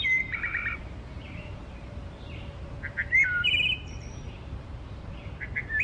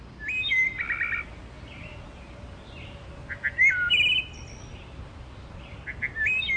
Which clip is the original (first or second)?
second